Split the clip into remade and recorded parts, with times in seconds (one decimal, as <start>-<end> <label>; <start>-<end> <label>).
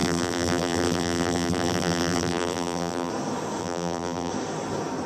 0.0-3.1 remade; 3.1-3.6 recorded; 3.6-4.3 remade; 4.3-5.1 recorded